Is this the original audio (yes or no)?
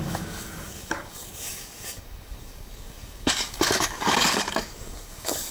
no